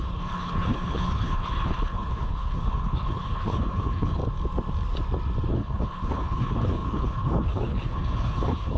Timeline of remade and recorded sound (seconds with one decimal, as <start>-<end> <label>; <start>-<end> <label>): 0.0-4.2 remade; 4.2-5.5 recorded; 5.5-8.8 remade